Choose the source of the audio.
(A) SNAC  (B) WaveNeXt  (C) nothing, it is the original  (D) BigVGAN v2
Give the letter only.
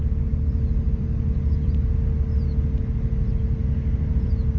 C